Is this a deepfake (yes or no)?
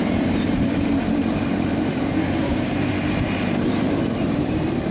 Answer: yes